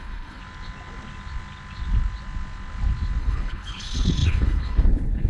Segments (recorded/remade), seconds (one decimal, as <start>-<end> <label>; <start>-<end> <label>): 0.0-0.4 remade; 0.4-3.2 recorded; 3.2-5.3 remade